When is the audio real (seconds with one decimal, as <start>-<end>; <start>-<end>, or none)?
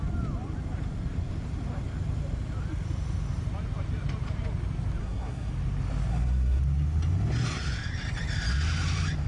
0.0-5.0; 5.5-6.1; 6.6-9.3